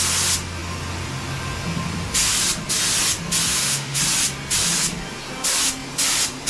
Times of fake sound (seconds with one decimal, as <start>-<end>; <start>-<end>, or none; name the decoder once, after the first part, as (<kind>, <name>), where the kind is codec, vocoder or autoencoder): 3.5-4.0 (autoencoder, DAC-VAE)